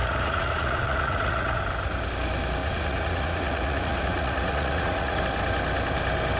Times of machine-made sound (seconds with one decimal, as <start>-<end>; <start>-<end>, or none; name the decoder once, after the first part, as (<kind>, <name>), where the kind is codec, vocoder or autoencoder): 0.0-1.6 (vocoder, Vocos); 2.6-5.2